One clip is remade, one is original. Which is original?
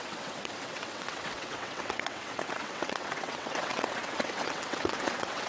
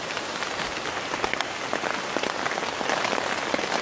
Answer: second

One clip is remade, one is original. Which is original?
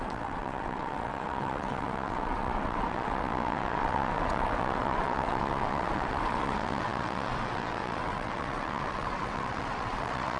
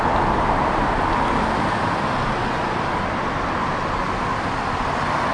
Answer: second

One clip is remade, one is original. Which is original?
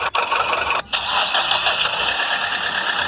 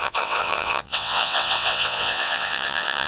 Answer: first